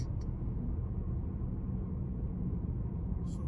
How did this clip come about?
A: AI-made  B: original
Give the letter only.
A